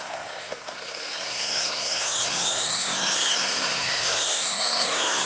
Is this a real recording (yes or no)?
no